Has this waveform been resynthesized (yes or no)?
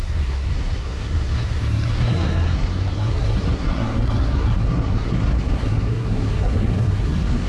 yes